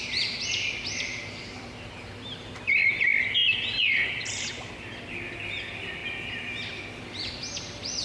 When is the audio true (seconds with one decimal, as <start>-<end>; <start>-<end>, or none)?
0.0-1.1; 2.9-3.4; 4.7-8.0